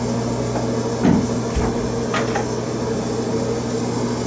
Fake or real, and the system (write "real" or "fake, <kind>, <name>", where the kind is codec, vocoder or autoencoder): real